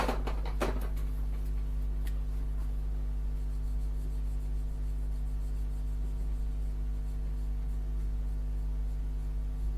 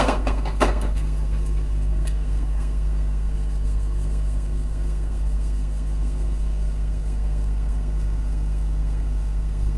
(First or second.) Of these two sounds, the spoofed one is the second